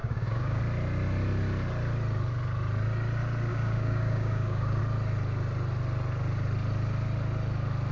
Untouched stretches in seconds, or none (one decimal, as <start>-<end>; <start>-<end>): 0.6-3.5; 4.8-7.9